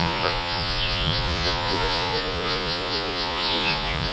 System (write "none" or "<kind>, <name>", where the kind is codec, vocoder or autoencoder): vocoder, Vocos